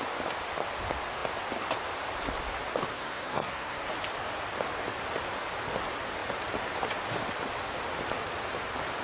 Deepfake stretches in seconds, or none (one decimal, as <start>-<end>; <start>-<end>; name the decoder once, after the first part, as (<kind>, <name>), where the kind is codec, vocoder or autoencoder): 2.9-3.9 (codec, SNAC)